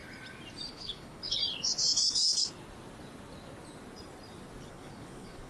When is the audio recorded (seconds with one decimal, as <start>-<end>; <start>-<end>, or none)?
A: 0.0-0.7; 1.4-4.7